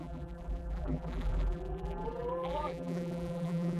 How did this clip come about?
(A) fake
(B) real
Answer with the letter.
A